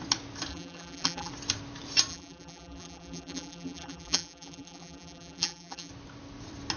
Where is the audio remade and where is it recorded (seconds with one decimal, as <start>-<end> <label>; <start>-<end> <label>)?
0.0-0.5 recorded; 0.5-1.3 remade; 1.3-2.1 recorded; 2.1-5.9 remade; 5.9-6.8 recorded

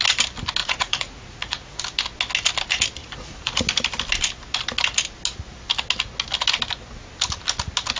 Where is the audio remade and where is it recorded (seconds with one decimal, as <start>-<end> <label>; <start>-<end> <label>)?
0.0-0.6 recorded; 0.6-1.8 remade; 1.8-3.0 recorded; 3.0-3.6 remade; 3.6-8.0 recorded

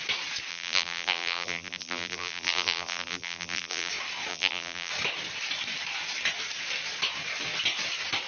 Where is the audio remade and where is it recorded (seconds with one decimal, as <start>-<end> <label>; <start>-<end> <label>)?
0.0-0.5 recorded; 0.5-3.9 remade; 3.9-4.3 recorded; 4.3-4.9 remade; 4.9-8.3 recorded

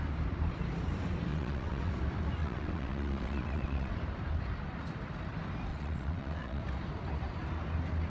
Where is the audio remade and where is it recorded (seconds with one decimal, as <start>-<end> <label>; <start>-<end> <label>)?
0.0-1.3 recorded; 1.3-1.9 remade; 1.9-2.4 recorded; 2.4-3.9 remade; 3.9-5.7 recorded; 5.7-6.6 remade; 6.6-8.1 recorded